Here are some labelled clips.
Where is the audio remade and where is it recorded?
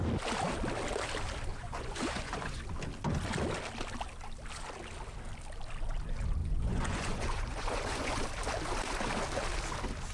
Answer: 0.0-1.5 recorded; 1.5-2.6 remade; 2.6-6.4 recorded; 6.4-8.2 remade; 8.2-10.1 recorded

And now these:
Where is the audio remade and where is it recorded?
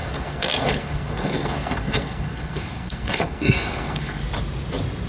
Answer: 0.0-4.2 remade; 4.2-5.1 recorded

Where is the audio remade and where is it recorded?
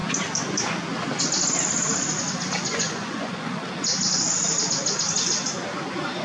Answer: 0.0-2.6 recorded; 2.6-3.6 remade; 3.6-6.2 recorded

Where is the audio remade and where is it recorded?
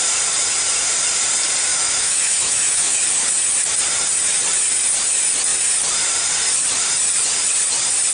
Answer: 0.0-1.7 recorded; 1.7-3.0 remade; 3.0-8.1 recorded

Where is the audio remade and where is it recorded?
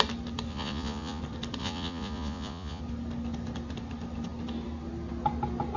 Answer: 0.0-0.5 recorded; 0.5-1.2 remade; 1.2-1.6 recorded; 1.6-2.8 remade; 2.8-5.8 recorded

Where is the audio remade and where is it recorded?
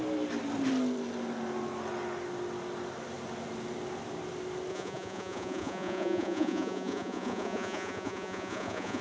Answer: 0.0-4.7 recorded; 4.7-9.0 remade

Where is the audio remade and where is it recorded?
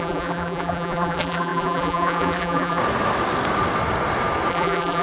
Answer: 0.0-2.8 remade; 2.8-4.5 recorded; 4.5-5.0 remade